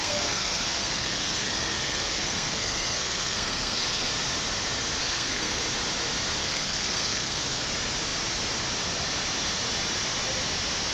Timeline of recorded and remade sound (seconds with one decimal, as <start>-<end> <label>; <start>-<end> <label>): 0.0-4.1 remade; 4.1-5.0 recorded; 5.0-5.6 remade; 5.6-6.4 recorded; 6.4-7.7 remade; 7.7-10.9 recorded